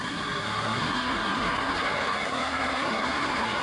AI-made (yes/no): yes